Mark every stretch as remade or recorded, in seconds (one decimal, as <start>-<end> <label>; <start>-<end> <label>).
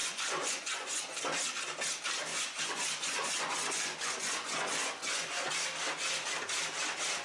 0.0-1.2 remade; 1.2-2.3 recorded; 2.3-5.5 remade; 5.5-7.2 recorded